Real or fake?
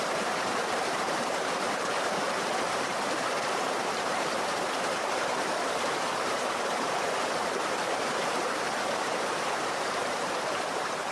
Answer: fake